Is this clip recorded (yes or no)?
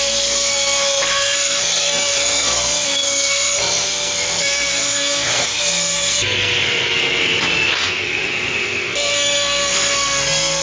no